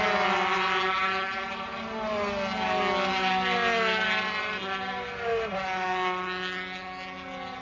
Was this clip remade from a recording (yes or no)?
no